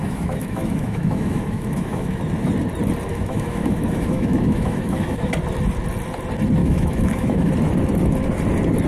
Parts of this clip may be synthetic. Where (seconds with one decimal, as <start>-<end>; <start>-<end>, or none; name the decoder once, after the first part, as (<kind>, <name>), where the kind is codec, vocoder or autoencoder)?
0.0-2.2 (autoencoder, DAC-VAE); 3.1-5.3; 6.6-7.5